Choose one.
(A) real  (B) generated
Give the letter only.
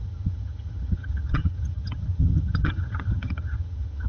B